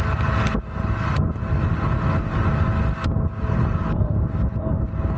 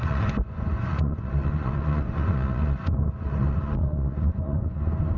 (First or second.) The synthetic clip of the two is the second